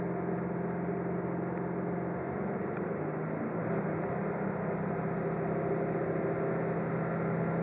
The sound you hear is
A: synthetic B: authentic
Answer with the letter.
B